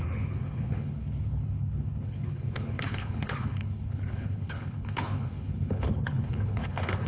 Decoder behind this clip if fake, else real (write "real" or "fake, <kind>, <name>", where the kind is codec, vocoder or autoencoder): fake, codec, HILCodec